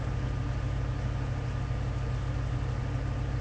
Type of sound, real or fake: real